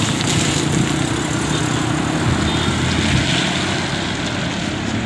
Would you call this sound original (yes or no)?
yes